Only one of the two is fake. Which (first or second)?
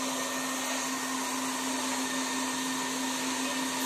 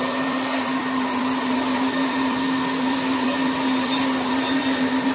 second